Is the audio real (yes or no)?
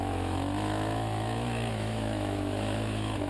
no